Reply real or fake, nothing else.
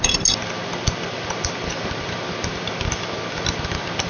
real